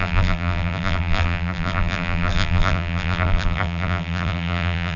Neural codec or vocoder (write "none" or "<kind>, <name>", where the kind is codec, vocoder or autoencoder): vocoder, BigVGAN v2